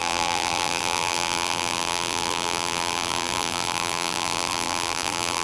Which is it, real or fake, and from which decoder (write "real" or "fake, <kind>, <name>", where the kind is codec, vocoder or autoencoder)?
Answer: fake, vocoder, BigVGAN v2